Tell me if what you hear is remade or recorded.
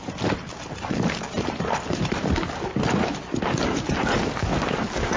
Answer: recorded